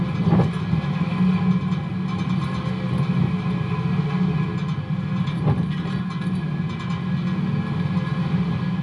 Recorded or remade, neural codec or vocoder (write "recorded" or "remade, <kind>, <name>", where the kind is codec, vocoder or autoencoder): recorded